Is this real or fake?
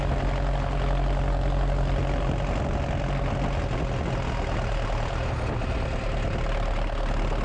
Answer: real